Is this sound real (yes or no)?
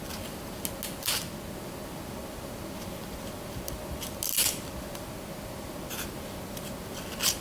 yes